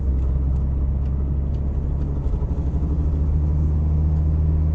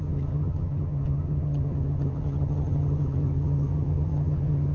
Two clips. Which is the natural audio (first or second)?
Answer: first